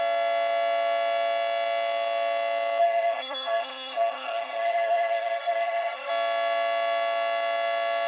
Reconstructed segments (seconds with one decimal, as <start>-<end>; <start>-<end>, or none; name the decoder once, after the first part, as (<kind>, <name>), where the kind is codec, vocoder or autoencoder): 2.8-6.1 (codec, SNAC)